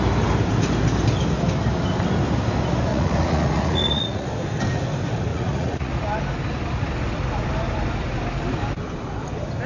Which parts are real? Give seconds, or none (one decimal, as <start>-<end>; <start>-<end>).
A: 0.0-2.9; 4.3-5.3; 5.9-9.7